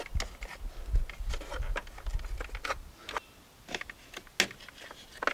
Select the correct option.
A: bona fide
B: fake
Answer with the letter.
A